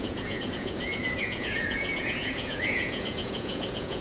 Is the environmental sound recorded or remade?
remade